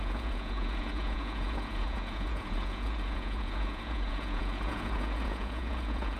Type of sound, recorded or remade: remade